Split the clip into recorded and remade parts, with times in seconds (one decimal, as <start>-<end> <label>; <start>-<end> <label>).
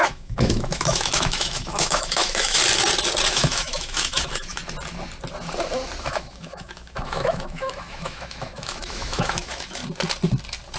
0.0-2.6 remade; 2.6-3.3 recorded; 3.3-4.6 remade; 4.6-6.0 recorded; 6.0-9.8 remade; 9.8-10.8 recorded